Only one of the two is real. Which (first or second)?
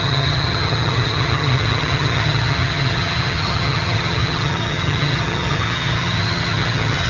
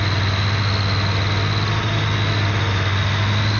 second